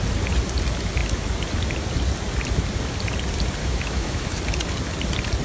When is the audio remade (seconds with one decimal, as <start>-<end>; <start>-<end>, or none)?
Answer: 3.6-4.4